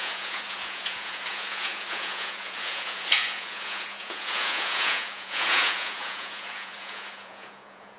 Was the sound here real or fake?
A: fake